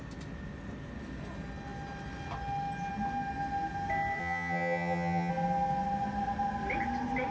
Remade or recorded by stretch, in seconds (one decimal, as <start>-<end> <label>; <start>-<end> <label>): 0.0-4.2 recorded; 4.2-5.3 remade; 5.3-7.3 recorded